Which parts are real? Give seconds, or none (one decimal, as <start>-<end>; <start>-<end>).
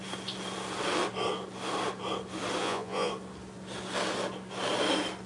0.0-2.6; 3.1-5.3